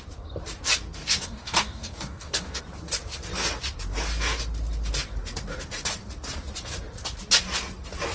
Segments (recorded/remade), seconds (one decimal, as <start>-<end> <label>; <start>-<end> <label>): 0.0-1.0 recorded; 1.0-2.6 remade; 2.6-8.1 recorded